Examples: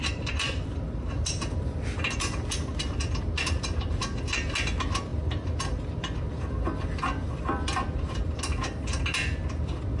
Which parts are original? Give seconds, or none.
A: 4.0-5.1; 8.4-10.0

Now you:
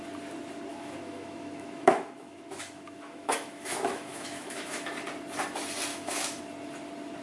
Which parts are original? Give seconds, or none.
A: 0.0-0.7; 4.9-5.9; 6.4-7.2

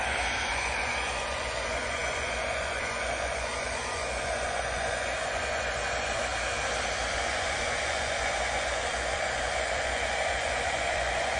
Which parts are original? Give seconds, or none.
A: 6.3-7.1

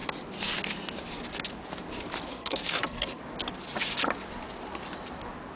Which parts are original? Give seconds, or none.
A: 0.0-2.3; 3.2-5.6

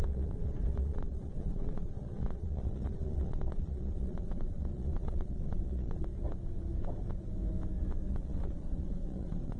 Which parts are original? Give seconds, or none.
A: 6.1-8.1

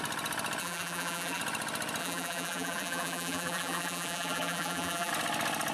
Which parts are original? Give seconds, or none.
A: 0.0-0.6; 1.4-2.0; 5.1-5.7